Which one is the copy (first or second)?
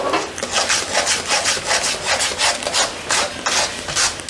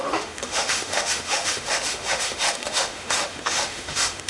second